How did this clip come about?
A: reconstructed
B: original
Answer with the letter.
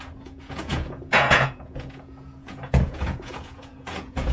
A